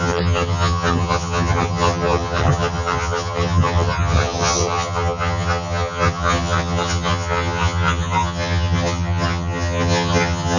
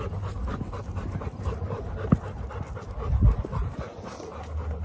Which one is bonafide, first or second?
second